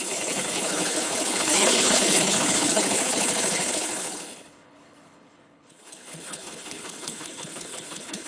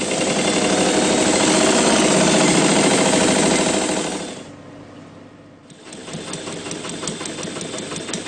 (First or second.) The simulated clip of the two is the first